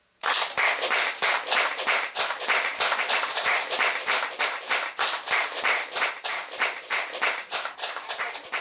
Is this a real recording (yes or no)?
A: no